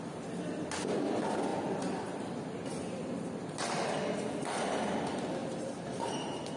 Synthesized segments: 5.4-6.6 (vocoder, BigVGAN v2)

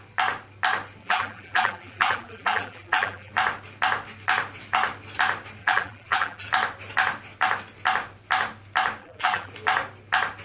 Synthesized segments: 1.0-3.3 (vocoder, BigVGAN v2); 5.6-6.5; 9.0-9.5

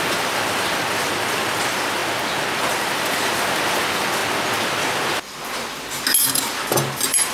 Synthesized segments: 0.0-2.0 (vocoder, BigVGAN v2); 2.6-4.2; 6.3-7.3

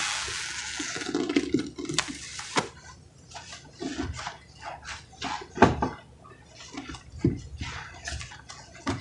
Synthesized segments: 0.0-1.6 (vocoder, BigVGAN v2)

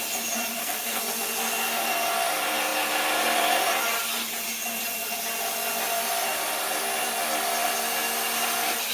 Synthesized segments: 0.5-1.0 (codec, SNAC)

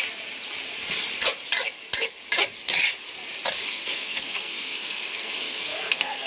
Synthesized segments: 3.6-6.3 (codec, SNAC)